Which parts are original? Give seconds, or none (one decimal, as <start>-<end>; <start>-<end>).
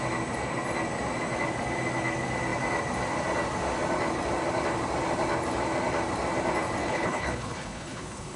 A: 0.0-6.8